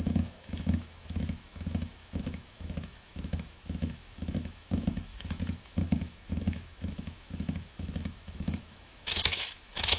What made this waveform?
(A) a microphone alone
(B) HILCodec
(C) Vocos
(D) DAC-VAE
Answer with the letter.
D